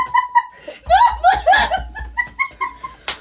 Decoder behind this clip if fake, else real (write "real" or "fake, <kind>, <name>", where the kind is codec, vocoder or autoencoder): real